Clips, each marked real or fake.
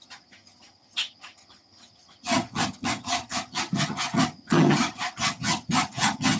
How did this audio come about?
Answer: fake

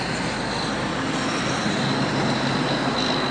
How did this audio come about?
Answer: real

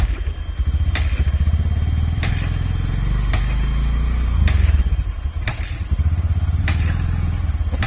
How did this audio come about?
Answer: real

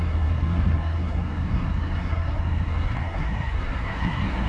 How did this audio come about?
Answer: fake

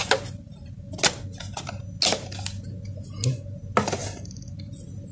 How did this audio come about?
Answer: real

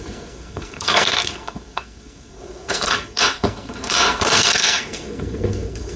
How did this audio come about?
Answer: fake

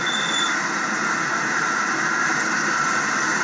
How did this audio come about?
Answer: real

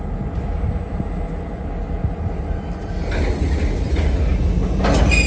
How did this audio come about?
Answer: real